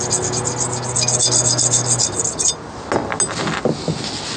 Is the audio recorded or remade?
recorded